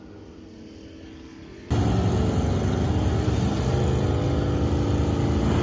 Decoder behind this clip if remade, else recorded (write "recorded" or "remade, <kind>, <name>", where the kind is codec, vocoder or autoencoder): recorded